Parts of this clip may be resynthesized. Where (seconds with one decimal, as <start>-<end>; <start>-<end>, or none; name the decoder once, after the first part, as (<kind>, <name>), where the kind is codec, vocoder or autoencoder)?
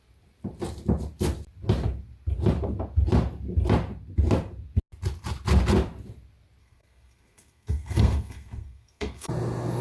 6.6-9.3 (codec, SNAC)